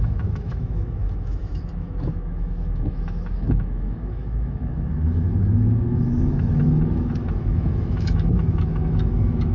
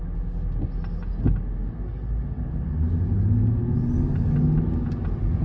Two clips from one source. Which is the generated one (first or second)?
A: first